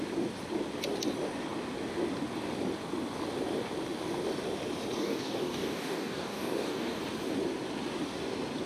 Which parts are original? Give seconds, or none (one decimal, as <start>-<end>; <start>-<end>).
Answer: 0.0-5.0; 7.0-8.7